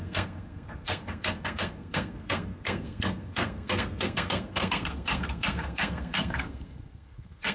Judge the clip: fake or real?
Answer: fake